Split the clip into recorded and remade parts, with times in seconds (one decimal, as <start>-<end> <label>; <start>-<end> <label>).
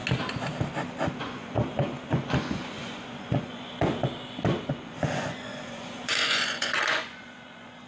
0.0-1.2 recorded; 1.2-3.9 remade; 3.9-4.7 recorded; 4.7-7.9 remade